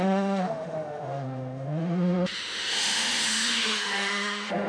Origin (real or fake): fake